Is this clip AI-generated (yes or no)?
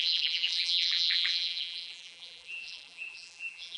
yes